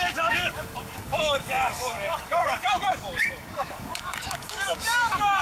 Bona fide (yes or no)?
no